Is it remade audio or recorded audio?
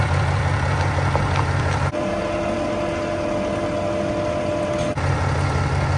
recorded